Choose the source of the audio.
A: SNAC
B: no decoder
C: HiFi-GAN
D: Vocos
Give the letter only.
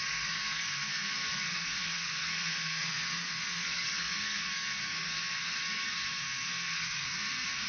A